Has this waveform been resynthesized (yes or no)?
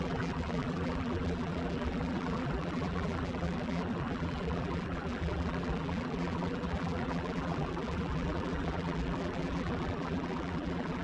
yes